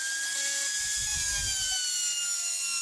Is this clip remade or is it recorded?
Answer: recorded